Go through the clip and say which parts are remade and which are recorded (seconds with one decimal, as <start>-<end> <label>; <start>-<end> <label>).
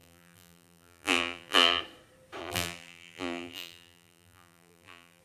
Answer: 0.0-1.8 remade; 1.8-2.4 recorded; 2.4-5.2 remade